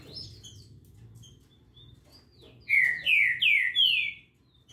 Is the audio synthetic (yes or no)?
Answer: no